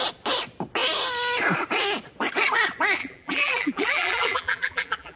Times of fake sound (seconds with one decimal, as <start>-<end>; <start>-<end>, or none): 3.0-5.2